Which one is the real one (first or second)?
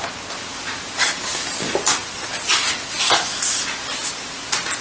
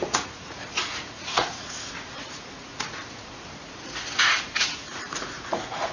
first